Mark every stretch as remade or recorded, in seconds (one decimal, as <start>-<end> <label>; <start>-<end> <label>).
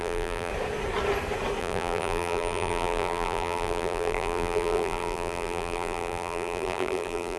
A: 0.0-0.5 remade; 0.5-1.6 recorded; 1.6-7.4 remade